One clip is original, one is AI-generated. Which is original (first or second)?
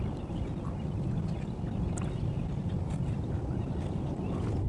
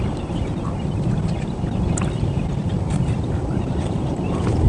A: first